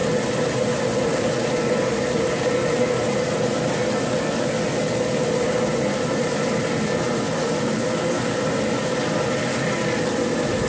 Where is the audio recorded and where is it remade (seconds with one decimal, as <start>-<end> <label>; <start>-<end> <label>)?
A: 0.0-10.7 recorded